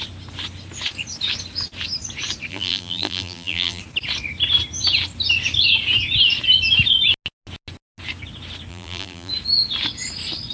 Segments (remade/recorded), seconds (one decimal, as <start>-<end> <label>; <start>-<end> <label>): 0.0-2.5 recorded; 2.5-3.8 remade; 3.8-8.7 recorded; 8.7-9.3 remade; 9.3-10.5 recorded